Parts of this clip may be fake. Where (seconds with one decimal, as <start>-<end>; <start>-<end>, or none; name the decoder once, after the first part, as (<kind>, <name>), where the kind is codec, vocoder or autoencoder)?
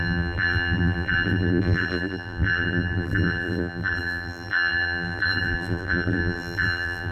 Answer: 0.0-7.1 (vocoder, BigVGAN v2)